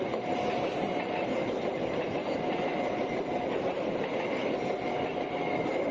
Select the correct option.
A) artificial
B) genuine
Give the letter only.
B